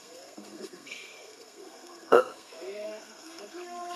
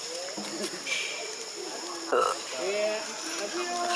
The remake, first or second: first